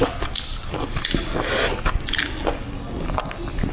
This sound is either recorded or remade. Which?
recorded